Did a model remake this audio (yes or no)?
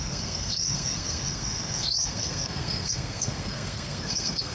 yes